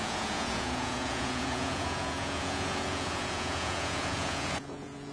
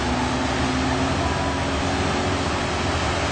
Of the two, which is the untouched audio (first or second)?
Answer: second